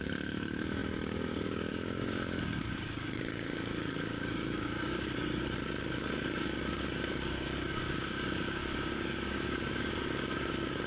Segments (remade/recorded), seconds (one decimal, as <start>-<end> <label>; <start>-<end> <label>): 0.0-10.9 remade